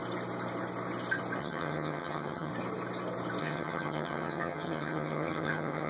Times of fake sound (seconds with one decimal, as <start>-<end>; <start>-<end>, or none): 1.4-2.5; 3.4-5.9

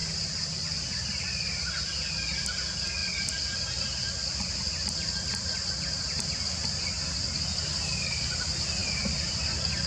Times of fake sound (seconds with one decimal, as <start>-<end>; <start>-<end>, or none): 8.8-9.4

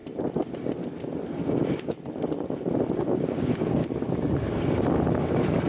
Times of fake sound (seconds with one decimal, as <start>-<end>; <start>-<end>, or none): 3.0-3.8

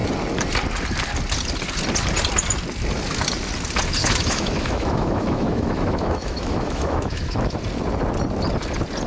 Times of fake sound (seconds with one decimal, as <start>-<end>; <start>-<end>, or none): 4.0-7.6

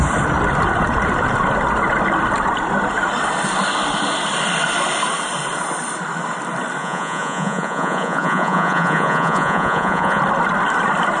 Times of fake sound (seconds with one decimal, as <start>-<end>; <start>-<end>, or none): 6.8-10.2

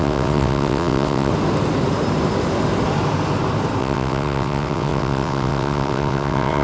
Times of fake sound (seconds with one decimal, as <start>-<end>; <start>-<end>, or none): 0.0-1.3; 3.8-6.6

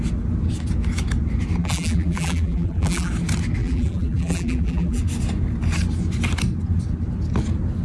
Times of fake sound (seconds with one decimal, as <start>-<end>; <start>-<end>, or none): 1.6-3.1; 3.6-5.0